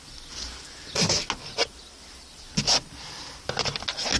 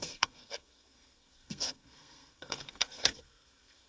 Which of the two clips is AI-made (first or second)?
second